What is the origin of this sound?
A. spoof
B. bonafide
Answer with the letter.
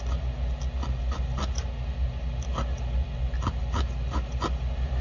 B